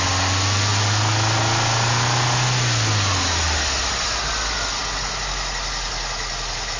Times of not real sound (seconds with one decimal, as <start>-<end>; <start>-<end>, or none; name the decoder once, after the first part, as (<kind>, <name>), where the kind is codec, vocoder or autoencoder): none